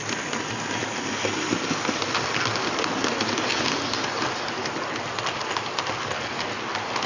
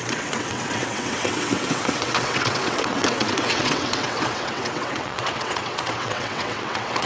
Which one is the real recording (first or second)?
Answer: first